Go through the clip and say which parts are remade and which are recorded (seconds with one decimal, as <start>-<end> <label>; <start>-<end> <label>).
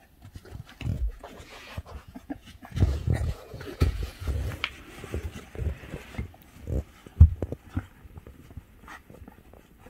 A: 0.0-0.9 recorded; 0.9-4.3 remade; 4.3-9.9 recorded